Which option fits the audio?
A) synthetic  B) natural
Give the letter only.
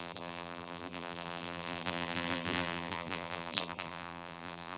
A